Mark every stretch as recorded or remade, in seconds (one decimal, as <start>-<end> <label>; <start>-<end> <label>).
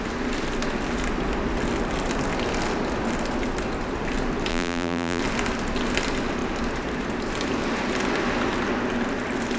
0.0-4.5 recorded; 4.5-5.2 remade; 5.2-9.6 recorded